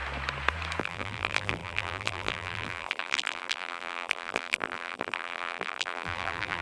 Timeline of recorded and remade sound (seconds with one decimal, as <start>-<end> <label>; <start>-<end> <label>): 0.0-0.8 recorded; 0.8-6.6 remade